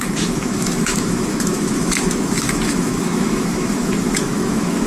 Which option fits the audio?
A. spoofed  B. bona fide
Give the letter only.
A